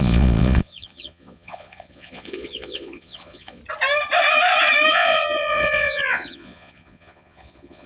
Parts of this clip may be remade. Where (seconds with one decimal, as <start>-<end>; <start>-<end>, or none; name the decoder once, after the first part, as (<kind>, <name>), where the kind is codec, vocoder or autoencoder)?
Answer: 0.0-3.6 (vocoder, Vocos); 4.9-7.9